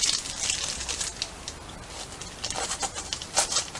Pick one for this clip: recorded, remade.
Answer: recorded